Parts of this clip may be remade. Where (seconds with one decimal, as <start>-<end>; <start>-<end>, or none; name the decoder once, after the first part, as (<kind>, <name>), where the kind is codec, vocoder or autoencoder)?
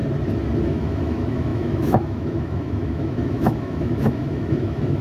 0.6-5.0 (autoencoder, DAC-VAE)